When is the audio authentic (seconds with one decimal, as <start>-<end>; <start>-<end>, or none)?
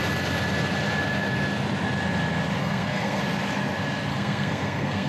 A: 0.0-2.6; 3.2-4.1